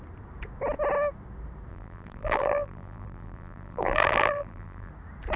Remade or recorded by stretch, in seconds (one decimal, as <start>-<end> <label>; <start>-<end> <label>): 0.0-1.7 recorded; 1.7-4.9 remade; 4.9-5.4 recorded